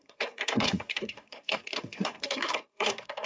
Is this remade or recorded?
remade